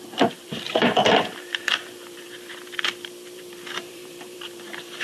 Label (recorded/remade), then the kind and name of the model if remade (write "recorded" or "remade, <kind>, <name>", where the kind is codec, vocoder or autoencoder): remade, vocoder, BigVGAN v2